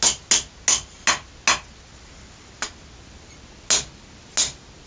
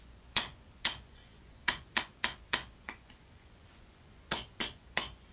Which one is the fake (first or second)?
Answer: second